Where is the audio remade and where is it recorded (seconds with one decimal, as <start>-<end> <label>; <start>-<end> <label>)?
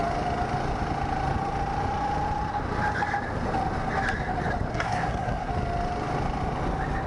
0.0-4.7 recorded; 4.7-5.5 remade; 5.5-7.1 recorded